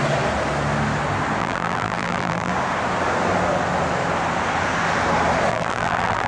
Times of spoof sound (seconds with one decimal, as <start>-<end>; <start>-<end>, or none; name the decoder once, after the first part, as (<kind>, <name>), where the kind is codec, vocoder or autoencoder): 1.4-2.5 (vocoder, BigVGAN v2); 5.5-6.3